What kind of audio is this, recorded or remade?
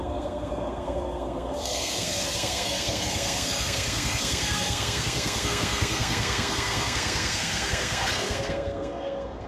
remade